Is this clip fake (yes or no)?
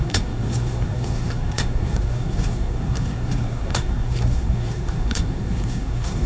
yes